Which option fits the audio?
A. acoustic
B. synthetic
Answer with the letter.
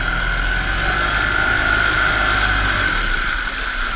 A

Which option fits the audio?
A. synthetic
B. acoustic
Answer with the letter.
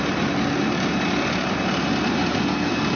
B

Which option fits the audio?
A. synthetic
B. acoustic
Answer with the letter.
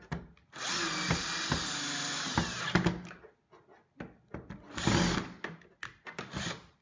B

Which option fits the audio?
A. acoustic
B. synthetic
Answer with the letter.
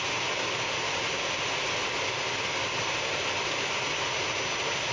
A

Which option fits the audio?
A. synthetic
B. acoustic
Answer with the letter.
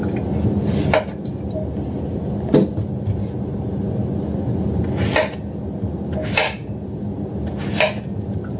B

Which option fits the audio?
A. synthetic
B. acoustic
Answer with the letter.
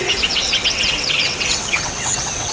A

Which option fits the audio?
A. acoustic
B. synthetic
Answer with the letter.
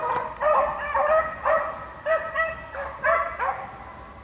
A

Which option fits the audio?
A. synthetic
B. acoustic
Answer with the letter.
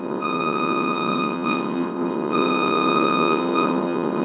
A